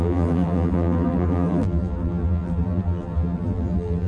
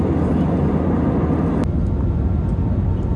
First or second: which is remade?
first